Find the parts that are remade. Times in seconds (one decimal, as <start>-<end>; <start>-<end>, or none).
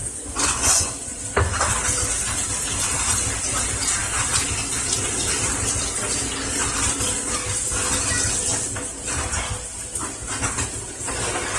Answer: 0.0-1.2